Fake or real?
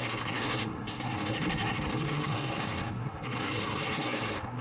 fake